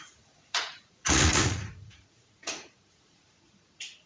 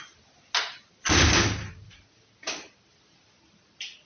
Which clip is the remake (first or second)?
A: first